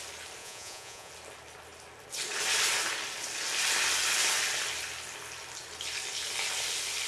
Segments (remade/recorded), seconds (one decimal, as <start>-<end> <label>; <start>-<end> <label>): 0.0-0.4 recorded; 0.4-1.1 remade; 1.1-7.1 recorded